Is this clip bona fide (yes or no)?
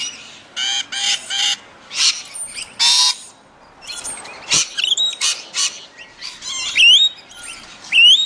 yes